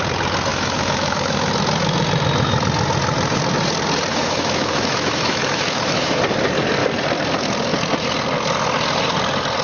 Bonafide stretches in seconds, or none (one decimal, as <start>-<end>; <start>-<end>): 0.0-0.5; 1.5-4.1; 6.2-9.6